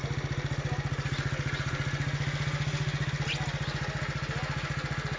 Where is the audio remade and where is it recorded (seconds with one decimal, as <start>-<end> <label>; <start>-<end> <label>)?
0.0-5.2 recorded